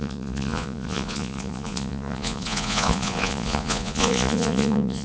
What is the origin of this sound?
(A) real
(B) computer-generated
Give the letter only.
B